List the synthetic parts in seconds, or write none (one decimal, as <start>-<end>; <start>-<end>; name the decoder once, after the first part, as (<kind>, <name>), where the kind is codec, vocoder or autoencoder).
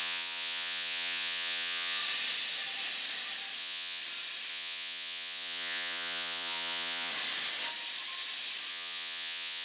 0.0-2.0 (vocoder, Vocos); 3.6-4.0; 4.5-7.1; 8.7-9.6